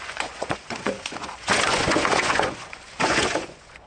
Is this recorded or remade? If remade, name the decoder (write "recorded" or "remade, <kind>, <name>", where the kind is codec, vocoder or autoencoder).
remade, vocoder, Vocos